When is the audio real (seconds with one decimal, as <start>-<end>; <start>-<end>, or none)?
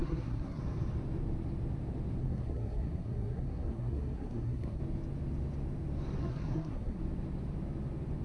0.6-2.2; 4.8-6.2; 7.0-8.2